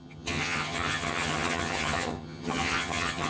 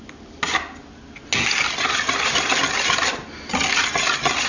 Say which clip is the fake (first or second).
first